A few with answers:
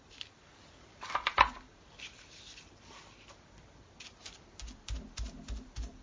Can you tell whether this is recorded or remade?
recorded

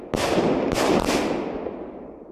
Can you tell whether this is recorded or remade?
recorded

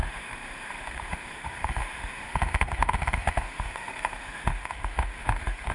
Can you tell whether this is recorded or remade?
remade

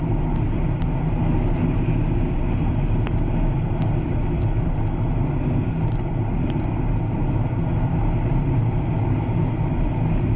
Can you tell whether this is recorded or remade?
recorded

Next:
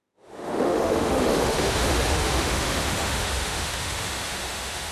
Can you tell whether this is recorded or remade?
remade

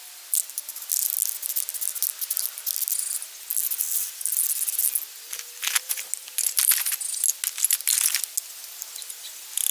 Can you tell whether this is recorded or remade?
recorded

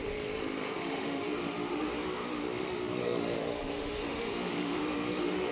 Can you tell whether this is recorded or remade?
remade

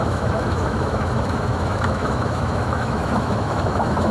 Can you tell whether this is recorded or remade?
remade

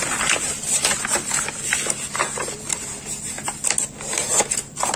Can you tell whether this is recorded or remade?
recorded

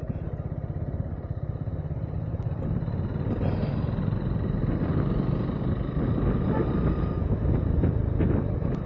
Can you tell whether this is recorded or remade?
recorded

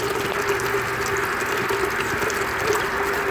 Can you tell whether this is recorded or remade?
recorded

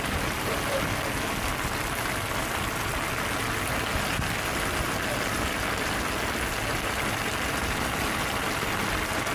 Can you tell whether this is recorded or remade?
recorded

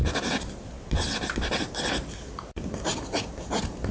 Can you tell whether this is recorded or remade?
recorded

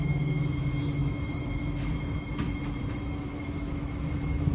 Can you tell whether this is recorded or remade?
remade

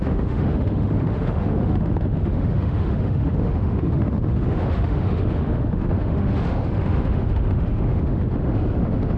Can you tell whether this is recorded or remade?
remade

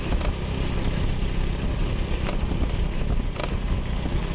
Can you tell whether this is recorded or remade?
recorded